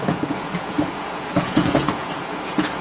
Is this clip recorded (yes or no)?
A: no